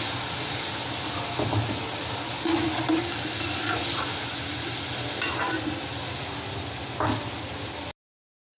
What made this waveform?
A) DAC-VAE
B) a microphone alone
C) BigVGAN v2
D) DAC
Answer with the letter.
B